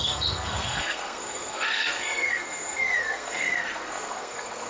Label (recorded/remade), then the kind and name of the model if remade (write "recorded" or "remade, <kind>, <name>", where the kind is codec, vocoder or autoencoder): remade, codec, SNAC